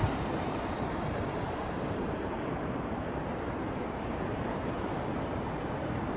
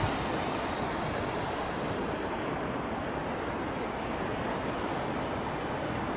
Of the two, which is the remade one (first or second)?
first